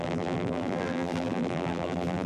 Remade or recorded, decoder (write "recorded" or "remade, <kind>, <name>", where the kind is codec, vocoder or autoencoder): remade, vocoder, BigVGAN v2